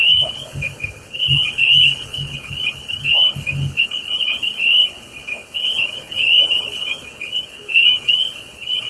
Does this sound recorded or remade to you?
remade